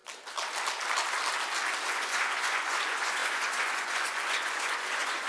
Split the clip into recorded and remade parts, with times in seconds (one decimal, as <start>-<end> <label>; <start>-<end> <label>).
0.0-1.9 recorded; 1.9-5.3 remade